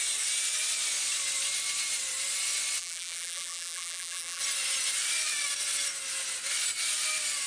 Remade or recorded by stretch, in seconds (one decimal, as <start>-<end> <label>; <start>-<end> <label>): 0.0-2.8 recorded; 2.8-4.4 remade; 4.4-7.5 recorded